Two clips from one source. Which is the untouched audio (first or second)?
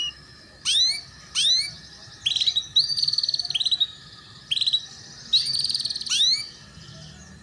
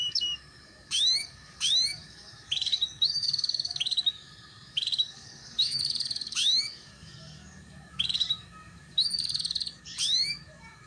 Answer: first